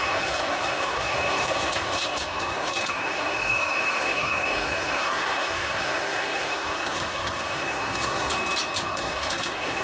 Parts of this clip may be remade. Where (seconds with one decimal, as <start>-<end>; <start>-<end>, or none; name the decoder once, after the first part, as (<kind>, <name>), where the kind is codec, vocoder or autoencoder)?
0.0-8.3 (codec, SNAC); 8.9-9.8